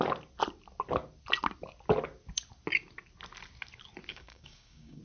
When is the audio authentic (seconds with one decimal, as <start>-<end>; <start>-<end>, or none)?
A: 0.0-4.1